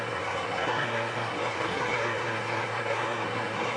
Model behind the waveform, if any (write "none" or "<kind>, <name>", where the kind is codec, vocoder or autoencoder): codec, SNAC